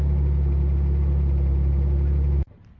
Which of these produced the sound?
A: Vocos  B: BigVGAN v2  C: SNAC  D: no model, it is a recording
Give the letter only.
D